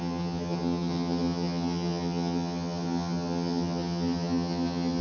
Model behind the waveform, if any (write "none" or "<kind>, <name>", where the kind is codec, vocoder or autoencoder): vocoder, HiFi-GAN